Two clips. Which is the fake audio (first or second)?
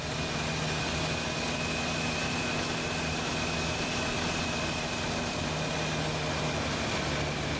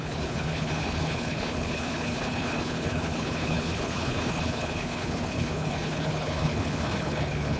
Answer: second